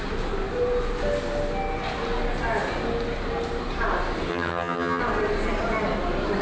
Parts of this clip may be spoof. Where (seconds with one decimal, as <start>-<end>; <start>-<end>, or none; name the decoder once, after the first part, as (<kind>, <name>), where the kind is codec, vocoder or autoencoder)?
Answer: 4.3-5.0 (vocoder, HiFi-GAN)